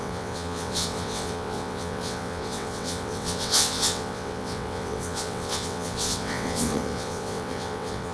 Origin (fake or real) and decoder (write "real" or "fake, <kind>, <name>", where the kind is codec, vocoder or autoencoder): fake, vocoder, WaveNeXt